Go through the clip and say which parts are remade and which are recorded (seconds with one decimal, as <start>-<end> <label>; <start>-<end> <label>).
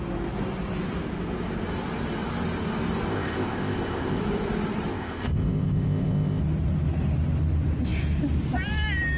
0.0-3.1 recorded; 3.1-4.2 remade; 4.2-4.9 recorded; 4.9-6.4 remade; 6.4-9.2 recorded